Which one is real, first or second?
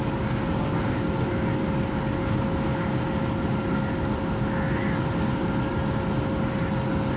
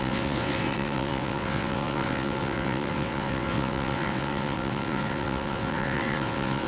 first